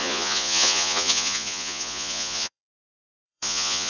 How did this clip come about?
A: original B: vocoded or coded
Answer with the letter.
B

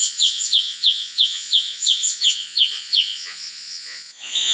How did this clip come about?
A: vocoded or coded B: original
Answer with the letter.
A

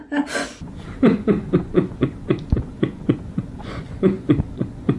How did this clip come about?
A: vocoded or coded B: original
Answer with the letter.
A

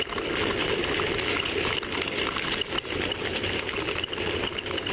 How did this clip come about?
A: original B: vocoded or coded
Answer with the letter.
A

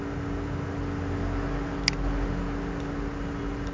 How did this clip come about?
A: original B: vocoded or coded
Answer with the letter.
A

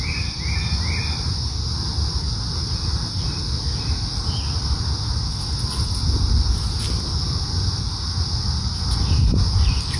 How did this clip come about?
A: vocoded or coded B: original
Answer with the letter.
B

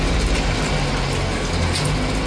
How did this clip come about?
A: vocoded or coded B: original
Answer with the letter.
B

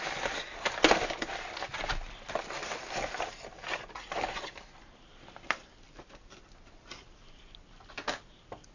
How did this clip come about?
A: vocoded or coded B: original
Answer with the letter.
B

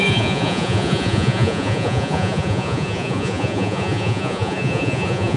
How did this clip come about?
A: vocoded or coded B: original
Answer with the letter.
A